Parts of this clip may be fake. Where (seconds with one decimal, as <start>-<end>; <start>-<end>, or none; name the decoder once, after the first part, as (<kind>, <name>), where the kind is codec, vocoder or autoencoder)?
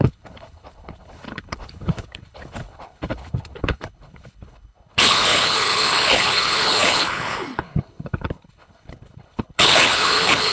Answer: 0.0-10.5 (codec, HILCodec)